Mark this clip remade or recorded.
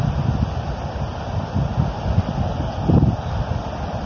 recorded